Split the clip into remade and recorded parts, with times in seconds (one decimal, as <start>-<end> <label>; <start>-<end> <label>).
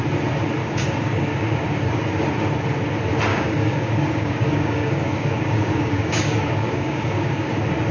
0.0-0.6 recorded; 0.6-2.0 remade; 2.0-3.3 recorded; 3.3-7.5 remade; 7.5-7.9 recorded